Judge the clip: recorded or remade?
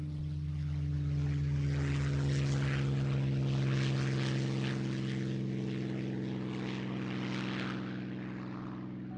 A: recorded